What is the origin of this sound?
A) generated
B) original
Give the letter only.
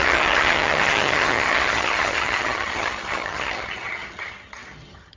A